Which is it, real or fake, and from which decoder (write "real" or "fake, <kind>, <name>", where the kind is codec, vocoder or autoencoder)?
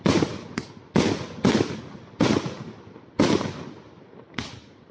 real